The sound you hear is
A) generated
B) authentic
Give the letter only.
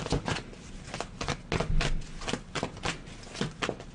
B